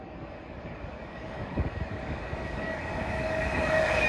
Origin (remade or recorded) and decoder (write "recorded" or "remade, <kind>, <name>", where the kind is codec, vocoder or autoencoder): remade, codec, DAC